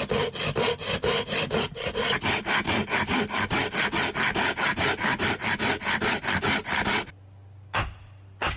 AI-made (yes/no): no